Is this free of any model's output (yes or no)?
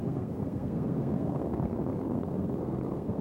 no